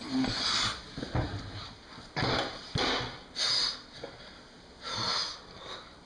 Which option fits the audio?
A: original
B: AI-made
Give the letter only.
A